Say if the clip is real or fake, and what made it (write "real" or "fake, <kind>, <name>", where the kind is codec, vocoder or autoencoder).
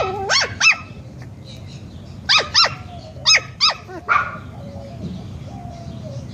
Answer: real